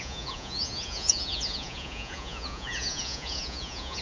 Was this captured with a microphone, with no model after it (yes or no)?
no